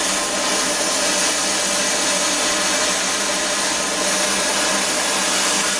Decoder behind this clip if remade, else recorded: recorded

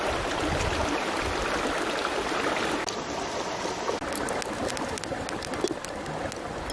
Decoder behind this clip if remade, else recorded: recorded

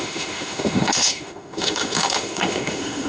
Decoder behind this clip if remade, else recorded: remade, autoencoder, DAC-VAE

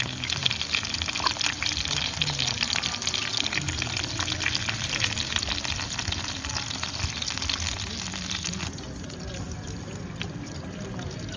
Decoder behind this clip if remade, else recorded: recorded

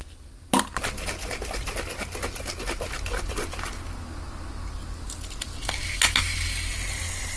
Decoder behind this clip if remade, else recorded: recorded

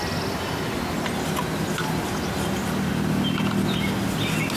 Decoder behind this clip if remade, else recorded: recorded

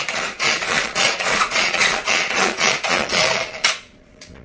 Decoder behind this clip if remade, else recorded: remade, vocoder, Vocos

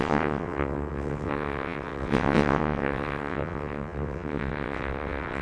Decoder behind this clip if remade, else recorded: remade, vocoder, WaveNeXt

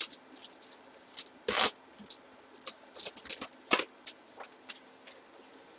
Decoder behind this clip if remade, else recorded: recorded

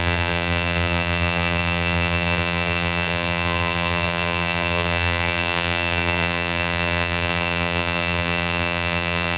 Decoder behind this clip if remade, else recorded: remade, vocoder, BigVGAN v2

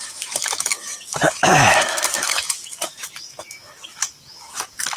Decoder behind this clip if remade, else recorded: remade, autoencoder, DAC-VAE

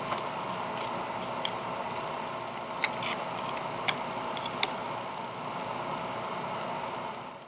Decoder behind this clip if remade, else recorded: recorded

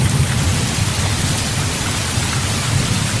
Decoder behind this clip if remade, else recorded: recorded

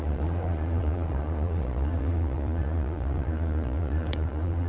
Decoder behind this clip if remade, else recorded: remade, vocoder, Vocos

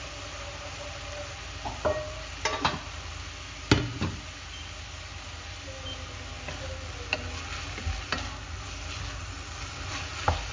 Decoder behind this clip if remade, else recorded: recorded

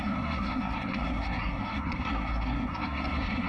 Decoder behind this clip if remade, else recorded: remade, codec, SNAC